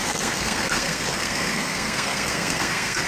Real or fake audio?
fake